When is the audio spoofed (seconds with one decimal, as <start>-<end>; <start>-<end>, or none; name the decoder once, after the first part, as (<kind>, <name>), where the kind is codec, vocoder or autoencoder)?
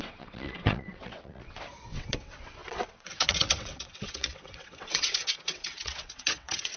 0.0-6.8 (vocoder, WaveNeXt)